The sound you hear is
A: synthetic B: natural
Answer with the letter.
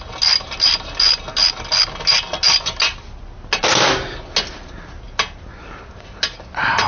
B